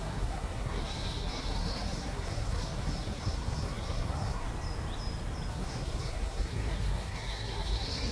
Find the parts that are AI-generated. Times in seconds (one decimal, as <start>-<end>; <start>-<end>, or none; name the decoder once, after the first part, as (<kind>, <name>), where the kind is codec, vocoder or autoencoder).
0.0-4.5 (codec, SNAC); 5.5-8.1